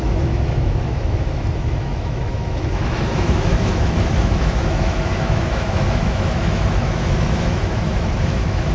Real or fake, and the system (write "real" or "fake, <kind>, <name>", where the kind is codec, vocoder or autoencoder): fake, autoencoder, DAC-VAE